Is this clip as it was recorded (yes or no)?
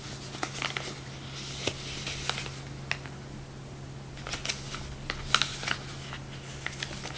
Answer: yes